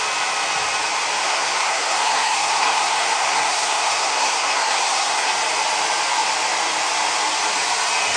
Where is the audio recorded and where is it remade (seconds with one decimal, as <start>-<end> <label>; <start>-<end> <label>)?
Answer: 0.0-1.2 recorded; 1.2-5.3 remade; 5.3-8.2 recorded

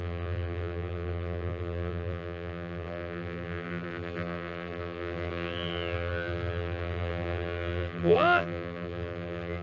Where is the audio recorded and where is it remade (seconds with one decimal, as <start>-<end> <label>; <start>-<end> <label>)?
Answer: 0.0-9.6 remade

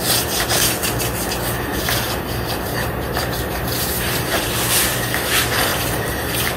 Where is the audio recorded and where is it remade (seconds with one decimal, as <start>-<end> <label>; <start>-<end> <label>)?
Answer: 0.0-1.7 recorded; 1.7-4.4 remade; 4.4-5.7 recorded; 5.7-6.6 remade

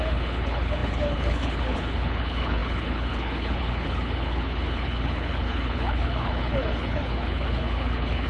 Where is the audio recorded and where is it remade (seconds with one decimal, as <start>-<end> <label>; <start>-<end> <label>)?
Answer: 0.0-8.3 remade

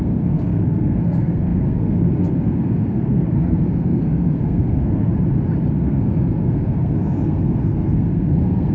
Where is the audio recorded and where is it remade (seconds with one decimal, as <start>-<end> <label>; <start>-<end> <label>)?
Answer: 0.0-5.1 remade; 5.1-5.7 recorded; 5.7-8.7 remade